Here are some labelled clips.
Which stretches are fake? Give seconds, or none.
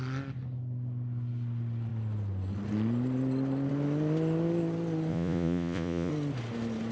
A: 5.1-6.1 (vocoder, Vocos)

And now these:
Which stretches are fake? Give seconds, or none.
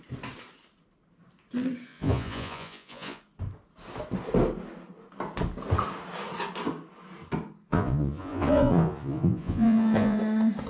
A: 1.9-3.2 (vocoder, Vocos); 7.7-10.2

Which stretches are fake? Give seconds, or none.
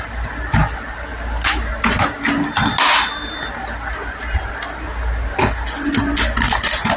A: none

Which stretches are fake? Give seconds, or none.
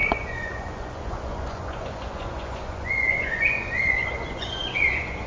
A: 0.0-5.3 (vocoder, Vocos)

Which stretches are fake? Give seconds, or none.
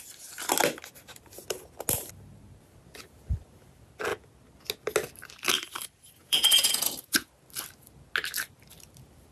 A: 6.2-7.3 (vocoder, Vocos)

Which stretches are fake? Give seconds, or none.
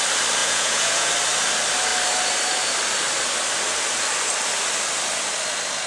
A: 0.4-1.1 (vocoder, Vocos)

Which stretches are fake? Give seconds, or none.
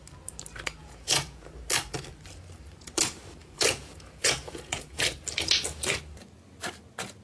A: 0.8-1.5 (vocoder, Vocos); 3.4-5.0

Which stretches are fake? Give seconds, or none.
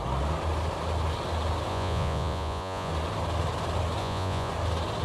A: 1.7-2.9 (vocoder, Vocos); 4.0-4.5